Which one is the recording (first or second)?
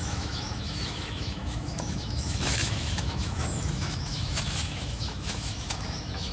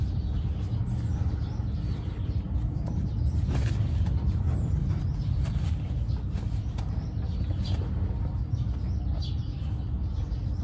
second